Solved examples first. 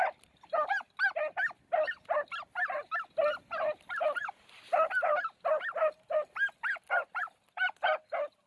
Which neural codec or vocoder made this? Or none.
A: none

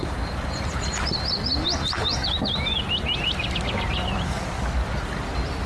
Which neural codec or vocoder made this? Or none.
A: none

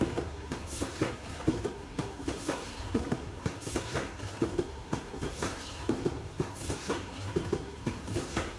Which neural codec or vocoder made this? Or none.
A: codec, SNAC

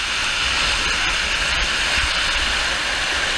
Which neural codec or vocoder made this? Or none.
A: none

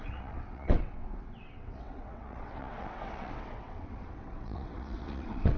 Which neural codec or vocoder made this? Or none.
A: vocoder, WaveNeXt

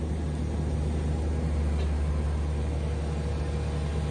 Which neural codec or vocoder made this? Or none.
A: none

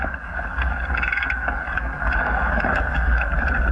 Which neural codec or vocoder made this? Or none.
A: codec, DAC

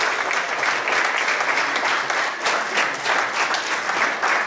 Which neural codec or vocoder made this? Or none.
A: none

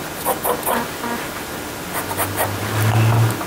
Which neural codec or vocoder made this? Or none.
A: none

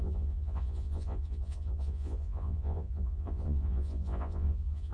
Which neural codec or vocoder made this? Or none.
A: vocoder, Vocos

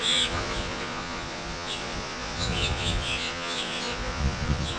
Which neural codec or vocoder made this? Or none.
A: vocoder, Vocos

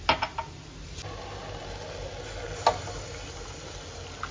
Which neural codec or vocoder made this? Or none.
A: none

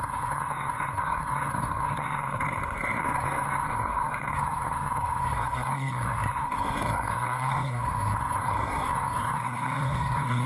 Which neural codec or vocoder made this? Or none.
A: codec, SNAC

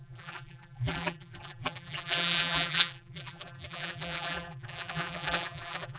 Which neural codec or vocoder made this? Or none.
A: vocoder, BigVGAN v2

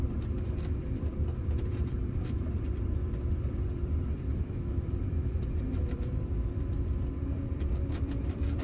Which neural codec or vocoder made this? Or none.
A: vocoder, BigVGAN v2